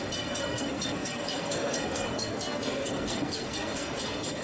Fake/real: fake